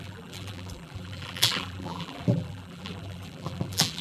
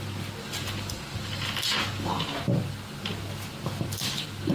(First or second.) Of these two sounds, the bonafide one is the second